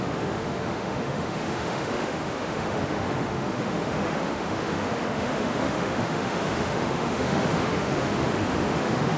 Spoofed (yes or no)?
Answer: yes